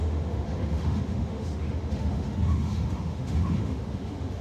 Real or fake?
fake